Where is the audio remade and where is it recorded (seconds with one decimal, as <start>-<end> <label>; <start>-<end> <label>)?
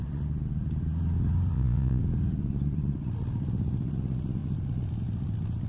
0.0-1.5 recorded; 1.5-2.0 remade; 2.0-5.7 recorded